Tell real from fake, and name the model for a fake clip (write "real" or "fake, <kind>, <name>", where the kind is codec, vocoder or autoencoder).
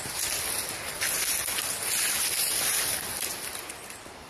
real